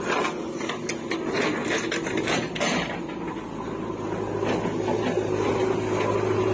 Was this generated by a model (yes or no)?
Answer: no